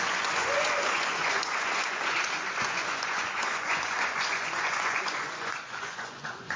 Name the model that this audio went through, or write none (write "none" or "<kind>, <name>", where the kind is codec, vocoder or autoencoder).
vocoder, Vocos